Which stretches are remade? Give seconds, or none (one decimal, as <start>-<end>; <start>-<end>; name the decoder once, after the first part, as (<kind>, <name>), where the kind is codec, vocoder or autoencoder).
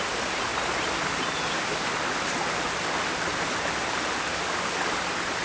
none